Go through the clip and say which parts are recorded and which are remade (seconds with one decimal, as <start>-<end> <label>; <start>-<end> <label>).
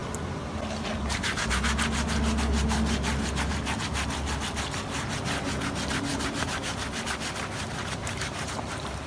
0.0-6.1 recorded; 6.1-6.7 remade; 6.7-8.0 recorded; 8.0-9.1 remade